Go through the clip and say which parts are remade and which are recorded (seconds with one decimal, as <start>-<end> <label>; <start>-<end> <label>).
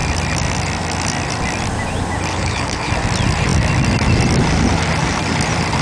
0.0-2.3 recorded; 2.3-2.9 remade; 2.9-5.8 recorded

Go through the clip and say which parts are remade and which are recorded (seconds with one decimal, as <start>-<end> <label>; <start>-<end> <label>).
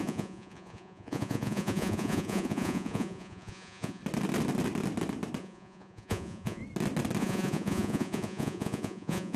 0.0-4.0 remade; 4.0-5.4 recorded; 5.4-6.6 remade; 6.6-7.2 recorded; 7.2-9.4 remade